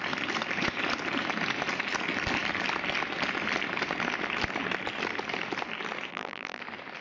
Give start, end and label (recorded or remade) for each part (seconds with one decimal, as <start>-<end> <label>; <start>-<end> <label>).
0.0-6.1 recorded; 6.1-6.6 remade; 6.6-7.0 recorded